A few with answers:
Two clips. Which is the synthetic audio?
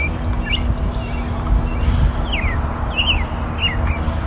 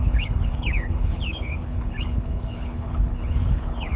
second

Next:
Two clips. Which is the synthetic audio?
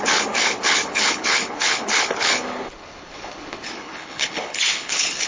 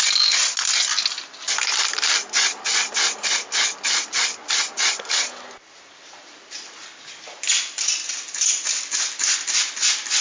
first